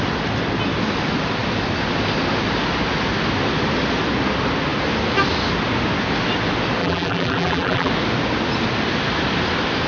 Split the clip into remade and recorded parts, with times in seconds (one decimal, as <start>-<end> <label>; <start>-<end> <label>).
0.0-6.8 recorded; 6.8-7.9 remade; 7.9-9.9 recorded